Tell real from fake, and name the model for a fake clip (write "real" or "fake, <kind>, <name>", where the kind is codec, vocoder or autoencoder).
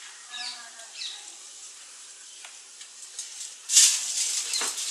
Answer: real